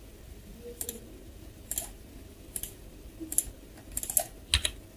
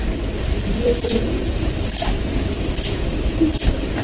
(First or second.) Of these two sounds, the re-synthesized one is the second